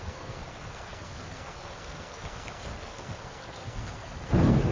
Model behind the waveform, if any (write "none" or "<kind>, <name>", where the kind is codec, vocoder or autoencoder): codec, SNAC